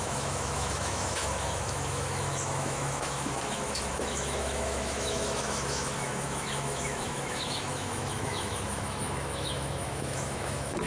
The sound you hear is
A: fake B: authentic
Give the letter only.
A